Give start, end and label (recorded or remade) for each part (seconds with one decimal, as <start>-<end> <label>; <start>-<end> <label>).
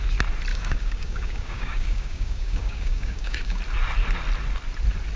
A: 0.0-0.5 recorded; 0.5-3.6 remade; 3.6-5.2 recorded